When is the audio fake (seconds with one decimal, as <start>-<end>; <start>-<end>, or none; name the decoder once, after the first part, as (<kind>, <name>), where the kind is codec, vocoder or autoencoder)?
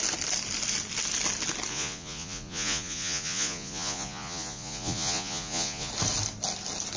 1.7-5.9 (vocoder, Vocos)